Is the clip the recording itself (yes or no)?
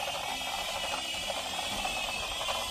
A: yes